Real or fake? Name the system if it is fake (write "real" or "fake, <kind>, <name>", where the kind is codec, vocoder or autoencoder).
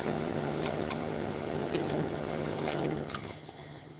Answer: fake, vocoder, HiFi-GAN